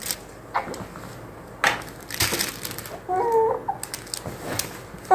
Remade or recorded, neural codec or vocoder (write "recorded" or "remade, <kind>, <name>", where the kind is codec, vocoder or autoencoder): recorded